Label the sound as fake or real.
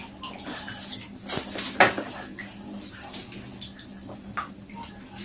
real